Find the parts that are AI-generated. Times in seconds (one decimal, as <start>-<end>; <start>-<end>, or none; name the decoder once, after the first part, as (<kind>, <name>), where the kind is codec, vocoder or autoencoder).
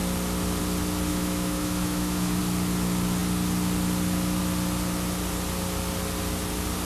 1.1-2.4 (autoencoder, DAC-VAE)